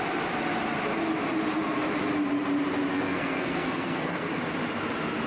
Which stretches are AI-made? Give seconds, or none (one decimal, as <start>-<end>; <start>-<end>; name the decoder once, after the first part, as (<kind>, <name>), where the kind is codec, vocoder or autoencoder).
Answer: 2.9-4.4 (codec, SNAC)